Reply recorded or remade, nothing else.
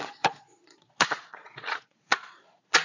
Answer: remade